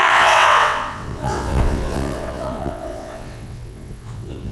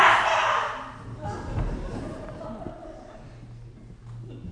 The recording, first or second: second